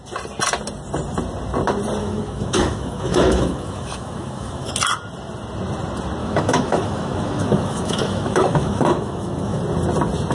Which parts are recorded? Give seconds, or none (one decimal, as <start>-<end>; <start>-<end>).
0.0-2.0; 4.7-6.2; 9.6-10.3